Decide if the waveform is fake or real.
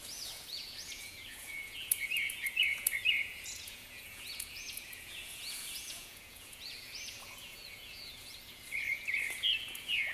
fake